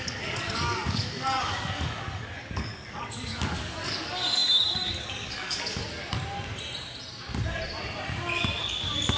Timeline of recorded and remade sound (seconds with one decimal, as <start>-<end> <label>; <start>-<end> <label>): 0.0-5.8 remade; 5.8-8.6 recorded; 8.6-9.2 remade